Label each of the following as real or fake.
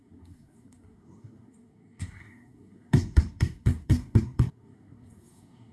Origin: fake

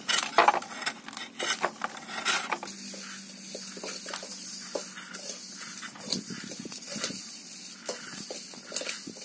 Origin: real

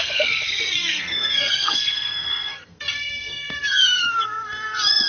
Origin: fake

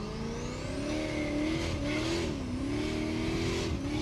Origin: real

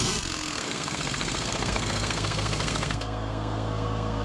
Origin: fake